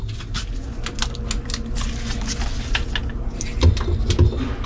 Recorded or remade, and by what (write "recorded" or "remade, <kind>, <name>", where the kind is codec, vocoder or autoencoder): recorded